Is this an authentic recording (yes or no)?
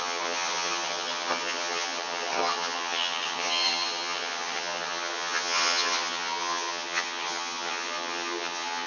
no